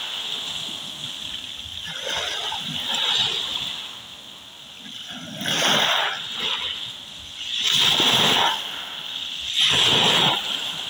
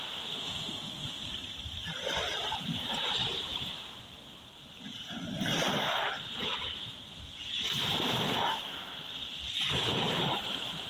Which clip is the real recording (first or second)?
first